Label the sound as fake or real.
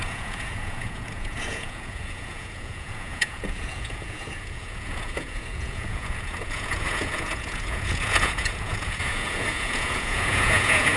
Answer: fake